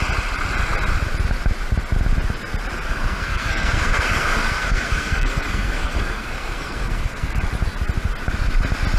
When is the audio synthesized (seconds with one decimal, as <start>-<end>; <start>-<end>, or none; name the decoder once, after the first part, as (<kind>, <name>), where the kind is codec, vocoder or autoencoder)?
2.9-7.4 (codec, SNAC)